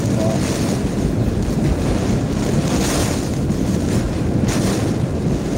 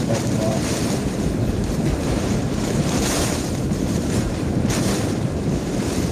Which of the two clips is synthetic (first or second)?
second